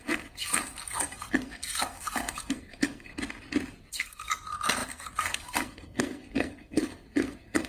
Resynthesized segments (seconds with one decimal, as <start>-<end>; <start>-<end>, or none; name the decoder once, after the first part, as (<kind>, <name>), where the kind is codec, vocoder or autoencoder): 0.0-3.1 (codec, SNAC); 3.9-7.7